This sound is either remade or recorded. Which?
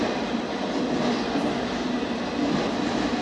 recorded